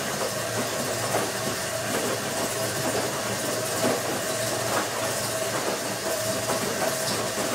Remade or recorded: recorded